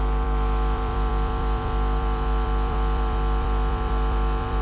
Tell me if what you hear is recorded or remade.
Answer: remade